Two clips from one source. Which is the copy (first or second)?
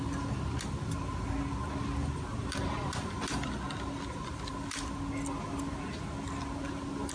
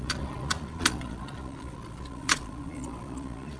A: second